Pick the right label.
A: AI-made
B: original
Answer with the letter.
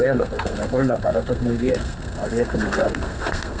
A